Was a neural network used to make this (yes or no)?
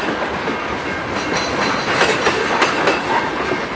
no